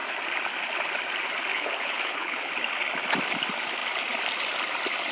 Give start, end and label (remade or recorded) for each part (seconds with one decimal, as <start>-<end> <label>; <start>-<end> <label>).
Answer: 0.0-1.5 recorded; 1.5-2.5 remade; 2.5-5.1 recorded